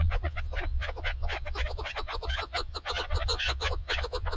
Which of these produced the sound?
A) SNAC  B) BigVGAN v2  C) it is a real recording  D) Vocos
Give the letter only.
D